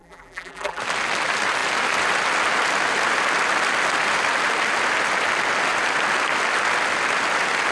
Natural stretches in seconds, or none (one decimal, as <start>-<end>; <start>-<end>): 0.8-7.7